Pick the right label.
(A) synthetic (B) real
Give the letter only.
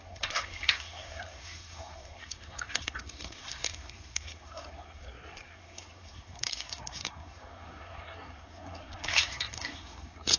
A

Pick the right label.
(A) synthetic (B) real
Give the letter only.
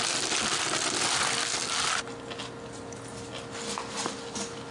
B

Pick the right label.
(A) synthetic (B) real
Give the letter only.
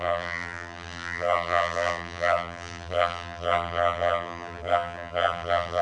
A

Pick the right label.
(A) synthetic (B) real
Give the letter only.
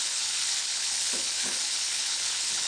A